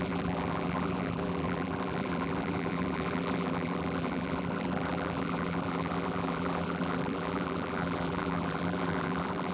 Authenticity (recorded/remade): remade